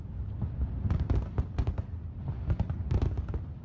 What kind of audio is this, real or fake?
real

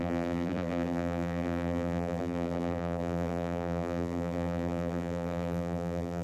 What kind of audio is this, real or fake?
fake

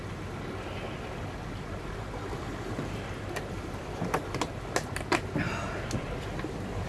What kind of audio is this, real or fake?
real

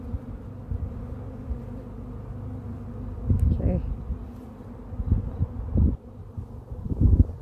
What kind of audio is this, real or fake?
real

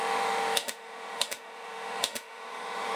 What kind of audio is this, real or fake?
fake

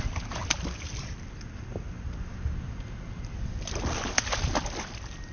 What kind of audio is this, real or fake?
real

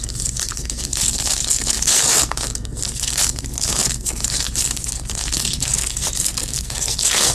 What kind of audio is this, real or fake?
fake